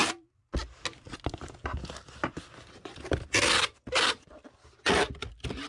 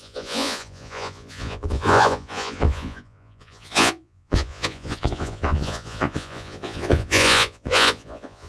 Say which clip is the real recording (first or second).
first